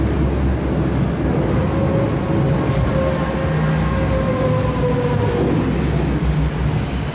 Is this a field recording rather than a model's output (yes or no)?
yes